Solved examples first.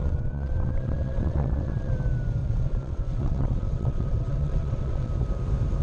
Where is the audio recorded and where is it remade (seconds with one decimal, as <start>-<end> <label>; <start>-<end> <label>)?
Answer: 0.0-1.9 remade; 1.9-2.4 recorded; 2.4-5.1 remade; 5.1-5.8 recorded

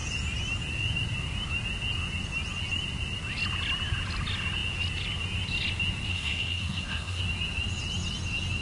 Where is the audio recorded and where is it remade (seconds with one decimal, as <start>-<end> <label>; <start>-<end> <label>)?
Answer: 0.0-6.1 recorded; 6.1-7.2 remade; 7.2-8.6 recorded

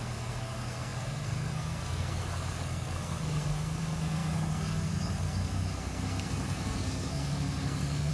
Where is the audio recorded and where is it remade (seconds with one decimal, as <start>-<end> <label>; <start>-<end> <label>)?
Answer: 0.0-8.1 remade

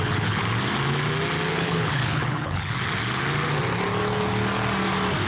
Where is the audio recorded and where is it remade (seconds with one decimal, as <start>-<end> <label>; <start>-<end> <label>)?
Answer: 0.0-0.4 remade; 0.4-1.5 recorded; 1.5-2.8 remade; 2.8-5.3 recorded

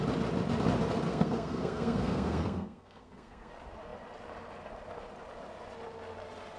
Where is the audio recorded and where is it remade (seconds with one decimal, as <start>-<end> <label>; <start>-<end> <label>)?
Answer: 0.0-1.1 recorded; 1.1-3.5 remade; 3.5-6.6 recorded

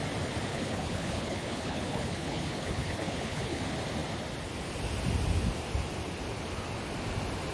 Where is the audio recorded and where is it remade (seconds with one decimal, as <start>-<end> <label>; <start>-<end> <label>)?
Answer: 0.0-0.5 recorded; 0.5-3.6 remade; 3.6-7.5 recorded

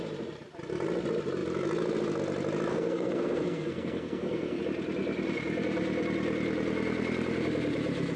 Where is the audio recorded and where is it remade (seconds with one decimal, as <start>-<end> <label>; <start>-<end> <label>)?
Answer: 0.0-2.7 recorded; 2.7-4.6 remade; 4.6-8.2 recorded